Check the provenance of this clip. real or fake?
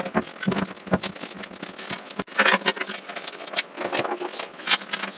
real